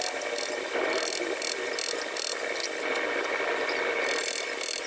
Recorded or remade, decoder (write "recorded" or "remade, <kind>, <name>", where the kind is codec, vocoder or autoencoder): recorded